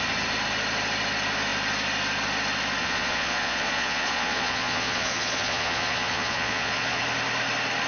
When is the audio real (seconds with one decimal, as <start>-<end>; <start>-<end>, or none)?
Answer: 0.0-2.8; 7.0-7.9